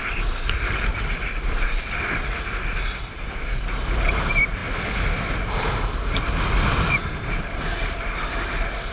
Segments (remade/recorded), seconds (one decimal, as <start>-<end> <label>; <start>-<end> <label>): 0.0-8.9 recorded